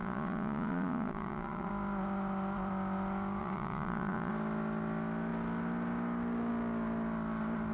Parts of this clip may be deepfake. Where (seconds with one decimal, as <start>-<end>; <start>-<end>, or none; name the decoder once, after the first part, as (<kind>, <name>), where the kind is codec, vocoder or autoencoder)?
0.0-1.7 (vocoder, Vocos); 3.4-4.3